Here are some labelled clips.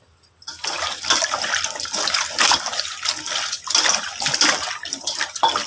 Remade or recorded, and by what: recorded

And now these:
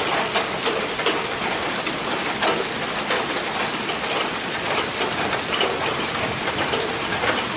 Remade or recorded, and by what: recorded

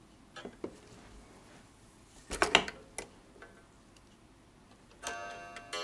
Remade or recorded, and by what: recorded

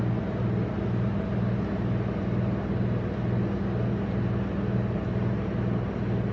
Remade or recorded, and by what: recorded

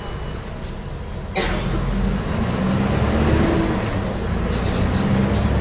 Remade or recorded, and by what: recorded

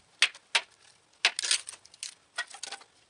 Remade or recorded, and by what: recorded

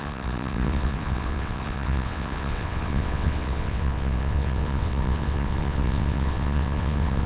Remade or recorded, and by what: remade, vocoder, WaveNeXt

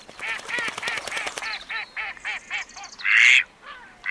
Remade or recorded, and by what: recorded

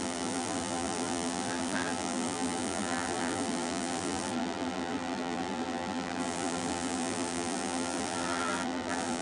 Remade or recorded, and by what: remade, vocoder, BigVGAN v2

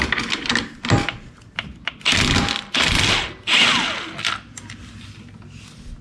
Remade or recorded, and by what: recorded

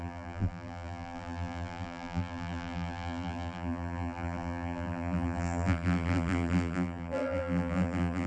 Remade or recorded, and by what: remade, vocoder, BigVGAN v2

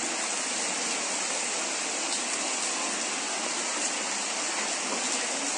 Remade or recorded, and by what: recorded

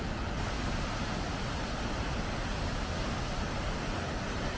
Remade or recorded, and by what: recorded